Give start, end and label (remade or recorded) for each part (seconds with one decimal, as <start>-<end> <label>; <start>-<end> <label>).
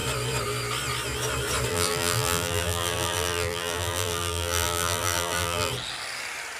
0.0-1.7 recorded; 1.7-5.7 remade; 5.7-6.6 recorded